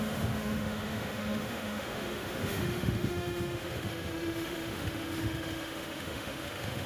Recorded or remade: remade